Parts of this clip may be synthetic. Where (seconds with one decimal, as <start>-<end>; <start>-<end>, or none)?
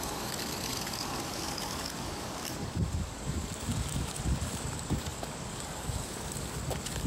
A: 0.0-7.1